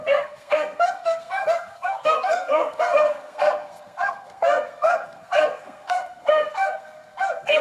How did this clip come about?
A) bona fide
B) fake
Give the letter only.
B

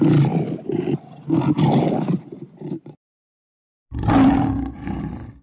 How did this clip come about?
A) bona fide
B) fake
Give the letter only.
A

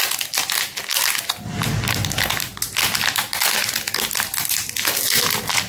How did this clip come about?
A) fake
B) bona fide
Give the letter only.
B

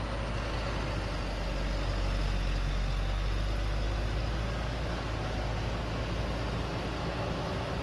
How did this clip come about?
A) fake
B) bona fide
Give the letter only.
B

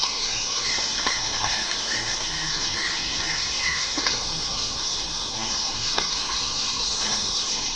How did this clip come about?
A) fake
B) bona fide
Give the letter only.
A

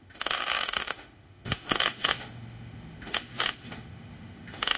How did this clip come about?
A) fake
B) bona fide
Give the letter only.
A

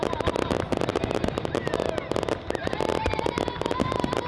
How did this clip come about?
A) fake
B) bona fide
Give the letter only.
B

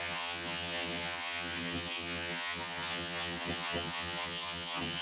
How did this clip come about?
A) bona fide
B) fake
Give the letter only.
B